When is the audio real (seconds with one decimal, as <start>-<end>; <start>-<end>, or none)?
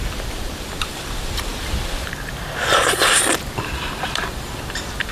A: 1.5-2.7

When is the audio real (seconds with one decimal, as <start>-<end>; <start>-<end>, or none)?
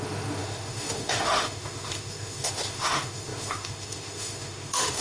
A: none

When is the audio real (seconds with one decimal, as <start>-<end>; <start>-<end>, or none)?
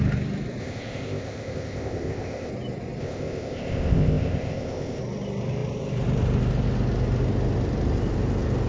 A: 0.0-0.6; 2.5-3.0; 5.0-8.7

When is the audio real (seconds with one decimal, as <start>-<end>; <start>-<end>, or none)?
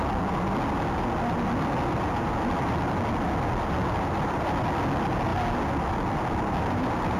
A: 0.0-3.8; 4.6-7.2